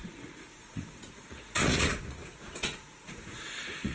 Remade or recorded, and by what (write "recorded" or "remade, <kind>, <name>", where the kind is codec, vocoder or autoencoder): remade, vocoder, Vocos